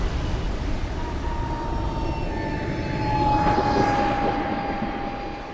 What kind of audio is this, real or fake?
real